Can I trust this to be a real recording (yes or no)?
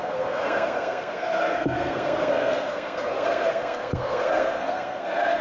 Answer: no